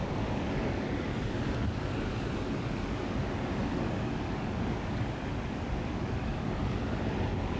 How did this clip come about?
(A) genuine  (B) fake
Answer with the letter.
B